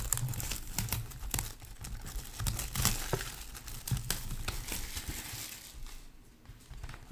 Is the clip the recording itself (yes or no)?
yes